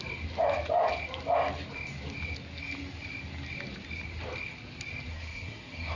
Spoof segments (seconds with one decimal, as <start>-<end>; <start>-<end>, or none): 5.1-6.0